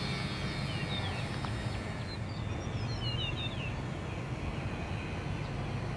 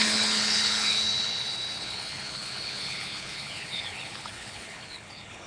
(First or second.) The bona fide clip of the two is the first